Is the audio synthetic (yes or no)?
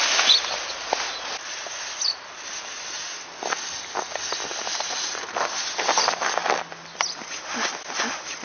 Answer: no